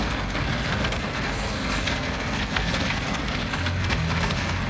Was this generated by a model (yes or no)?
yes